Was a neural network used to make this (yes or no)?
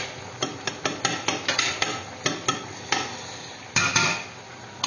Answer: no